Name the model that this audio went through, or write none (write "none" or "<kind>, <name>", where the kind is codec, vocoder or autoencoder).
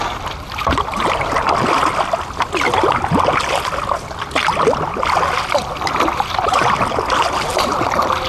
none